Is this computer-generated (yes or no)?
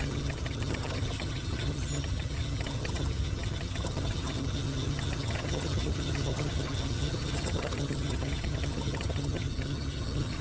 yes